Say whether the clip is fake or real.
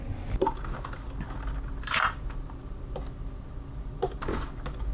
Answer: real